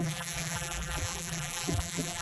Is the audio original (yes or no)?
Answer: no